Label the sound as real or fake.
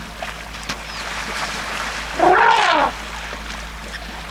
real